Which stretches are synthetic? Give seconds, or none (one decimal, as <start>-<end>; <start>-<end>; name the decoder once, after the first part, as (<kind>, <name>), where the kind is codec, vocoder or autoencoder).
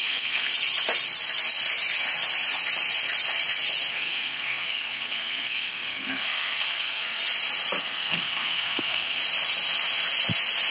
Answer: 0.0-0.5 (codec, SNAC); 3.9-7.2; 7.8-9.2